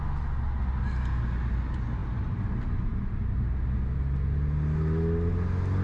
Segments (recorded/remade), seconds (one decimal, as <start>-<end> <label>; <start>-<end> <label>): 0.0-5.8 recorded